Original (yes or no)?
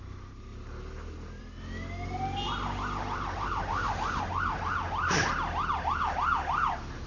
yes